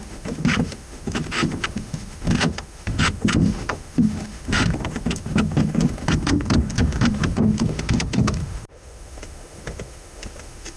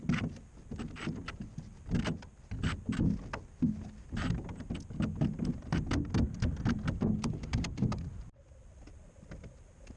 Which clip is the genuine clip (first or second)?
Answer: second